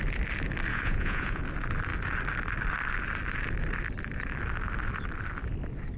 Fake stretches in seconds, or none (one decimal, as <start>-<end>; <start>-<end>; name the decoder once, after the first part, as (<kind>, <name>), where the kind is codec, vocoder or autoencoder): 0.7-1.4 (vocoder, Vocos)